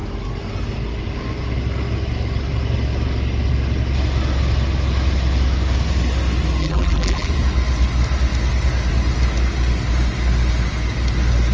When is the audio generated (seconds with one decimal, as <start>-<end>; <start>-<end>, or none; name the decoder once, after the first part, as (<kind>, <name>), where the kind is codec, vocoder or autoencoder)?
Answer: 6.6-7.3 (vocoder, BigVGAN v2)